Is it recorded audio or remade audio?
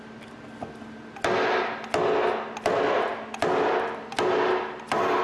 recorded